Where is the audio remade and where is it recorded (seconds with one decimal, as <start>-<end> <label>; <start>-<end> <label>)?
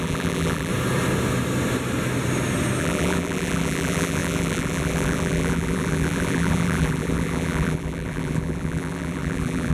0.0-0.7 remade; 0.7-2.8 recorded; 2.8-9.7 remade